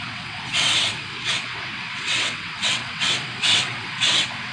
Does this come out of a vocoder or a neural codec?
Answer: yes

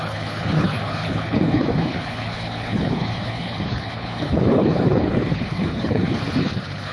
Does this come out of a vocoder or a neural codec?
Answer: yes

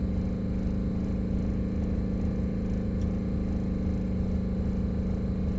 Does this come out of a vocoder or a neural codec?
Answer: no